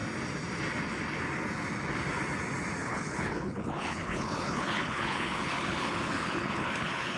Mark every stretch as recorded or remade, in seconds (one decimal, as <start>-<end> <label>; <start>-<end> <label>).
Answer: 0.0-2.8 recorded; 2.8-7.2 remade